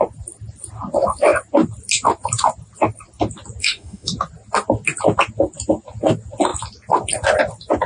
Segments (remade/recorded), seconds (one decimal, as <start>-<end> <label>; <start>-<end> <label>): 0.0-3.6 recorded; 3.6-4.1 remade; 4.1-7.9 recorded